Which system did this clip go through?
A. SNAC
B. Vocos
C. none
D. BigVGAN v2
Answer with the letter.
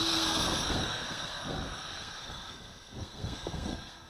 A